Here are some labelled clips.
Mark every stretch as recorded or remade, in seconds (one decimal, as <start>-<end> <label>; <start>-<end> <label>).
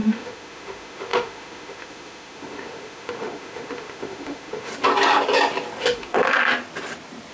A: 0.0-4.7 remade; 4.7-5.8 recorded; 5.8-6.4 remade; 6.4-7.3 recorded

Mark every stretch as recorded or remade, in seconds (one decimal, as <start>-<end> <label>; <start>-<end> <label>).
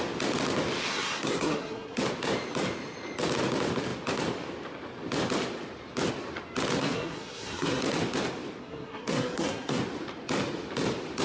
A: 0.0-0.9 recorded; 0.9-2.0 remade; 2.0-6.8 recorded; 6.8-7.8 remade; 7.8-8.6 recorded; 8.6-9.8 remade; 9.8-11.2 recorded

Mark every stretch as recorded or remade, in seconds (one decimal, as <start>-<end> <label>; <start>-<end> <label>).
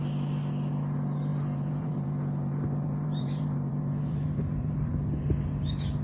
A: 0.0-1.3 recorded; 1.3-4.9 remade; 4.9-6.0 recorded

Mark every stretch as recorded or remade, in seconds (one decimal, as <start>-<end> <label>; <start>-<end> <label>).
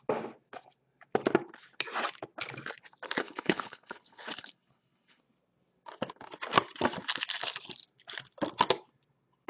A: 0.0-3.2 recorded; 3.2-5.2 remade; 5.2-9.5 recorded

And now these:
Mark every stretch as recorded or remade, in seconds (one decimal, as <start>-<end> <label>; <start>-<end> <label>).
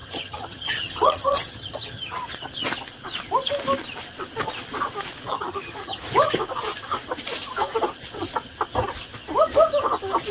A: 0.0-2.3 remade; 2.3-5.3 recorded; 5.3-6.0 remade; 6.0-10.3 recorded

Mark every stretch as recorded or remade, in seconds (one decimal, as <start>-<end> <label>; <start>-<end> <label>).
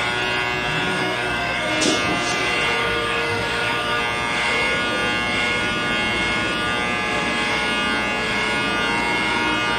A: 0.0-0.9 recorded; 0.9-1.7 remade; 1.7-2.8 recorded; 2.8-4.0 remade; 4.0-9.8 recorded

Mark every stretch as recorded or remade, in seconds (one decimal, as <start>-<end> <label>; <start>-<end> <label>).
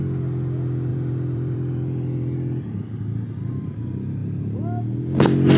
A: 0.0-0.9 recorded; 0.9-2.6 remade; 2.6-4.2 recorded; 4.2-5.6 remade